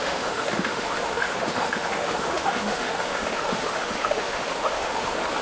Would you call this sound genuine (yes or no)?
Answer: no